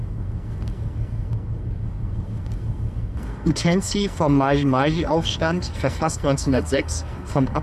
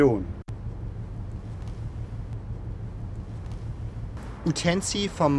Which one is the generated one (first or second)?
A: first